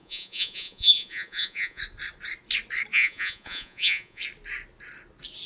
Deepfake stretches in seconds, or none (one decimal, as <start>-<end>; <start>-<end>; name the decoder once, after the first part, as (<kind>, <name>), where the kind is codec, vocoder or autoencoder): 0.0-1.8 (vocoder, Vocos); 2.9-4.2